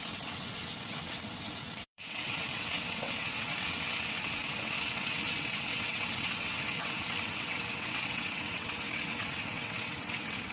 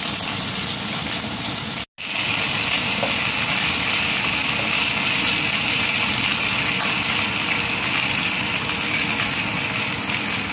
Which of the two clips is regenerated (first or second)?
first